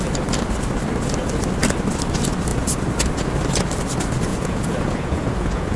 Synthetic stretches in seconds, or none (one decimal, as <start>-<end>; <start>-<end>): 4.3-5.8